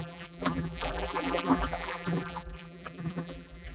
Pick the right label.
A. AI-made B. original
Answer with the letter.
A